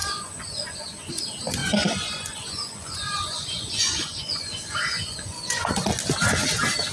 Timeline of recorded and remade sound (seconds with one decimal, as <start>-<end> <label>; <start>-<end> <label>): 0.0-1.2 remade; 1.2-1.6 recorded; 1.6-5.7 remade; 5.7-6.9 recorded